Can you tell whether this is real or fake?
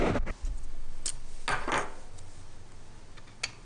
real